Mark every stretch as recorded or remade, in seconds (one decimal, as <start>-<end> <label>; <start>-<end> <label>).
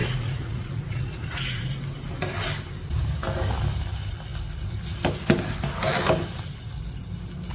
0.0-1.7 remade; 1.7-7.5 recorded